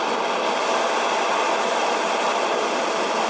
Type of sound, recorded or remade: recorded